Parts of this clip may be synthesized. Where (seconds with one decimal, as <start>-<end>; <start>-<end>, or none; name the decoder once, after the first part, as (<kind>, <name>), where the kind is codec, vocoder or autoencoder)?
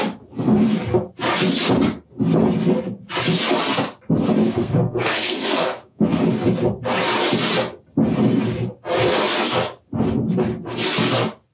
4.4-6.2 (codec, SNAC)